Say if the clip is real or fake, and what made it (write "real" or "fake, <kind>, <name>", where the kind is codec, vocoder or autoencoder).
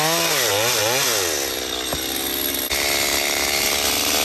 real